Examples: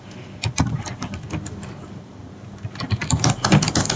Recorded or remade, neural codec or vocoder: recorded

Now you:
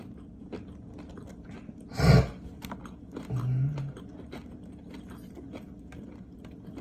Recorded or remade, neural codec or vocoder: recorded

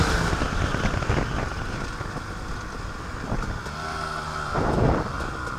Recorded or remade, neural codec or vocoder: recorded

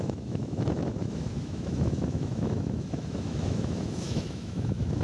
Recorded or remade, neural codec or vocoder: remade, autoencoder, DAC-VAE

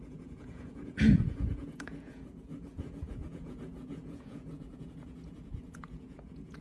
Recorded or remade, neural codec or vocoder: remade, vocoder, Vocos